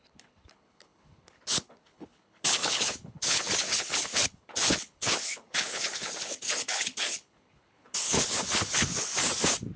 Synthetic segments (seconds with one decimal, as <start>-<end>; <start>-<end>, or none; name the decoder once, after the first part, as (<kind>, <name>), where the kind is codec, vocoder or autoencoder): 0.0-9.1 (codec, HILCodec)